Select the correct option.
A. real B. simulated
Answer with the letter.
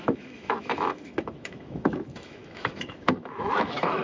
B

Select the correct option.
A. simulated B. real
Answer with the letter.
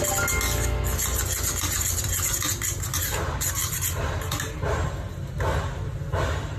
B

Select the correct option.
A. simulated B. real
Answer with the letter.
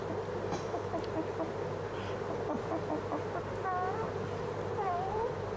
B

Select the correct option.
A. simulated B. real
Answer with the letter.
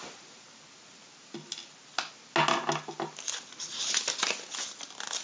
B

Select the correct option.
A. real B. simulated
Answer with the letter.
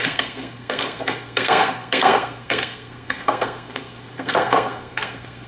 B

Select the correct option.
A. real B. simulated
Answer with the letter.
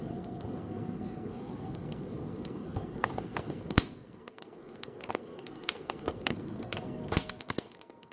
B